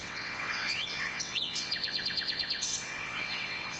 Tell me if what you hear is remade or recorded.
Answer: remade